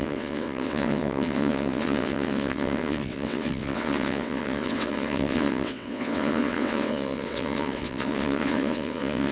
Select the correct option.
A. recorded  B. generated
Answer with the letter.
B